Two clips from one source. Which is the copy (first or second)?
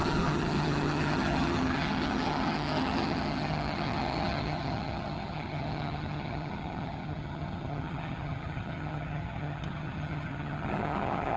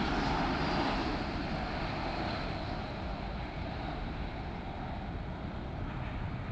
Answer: first